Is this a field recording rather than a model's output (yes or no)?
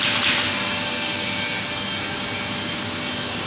yes